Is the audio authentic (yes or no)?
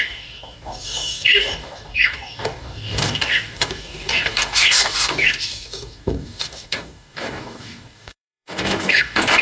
no